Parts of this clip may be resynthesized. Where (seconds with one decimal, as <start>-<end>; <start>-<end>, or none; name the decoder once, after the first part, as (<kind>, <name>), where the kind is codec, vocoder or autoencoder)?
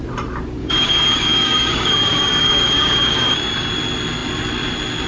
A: 0.6-3.7 (codec, DAC)